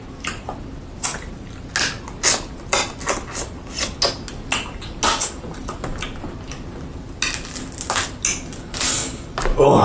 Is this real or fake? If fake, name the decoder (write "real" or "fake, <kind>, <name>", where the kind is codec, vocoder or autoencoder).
real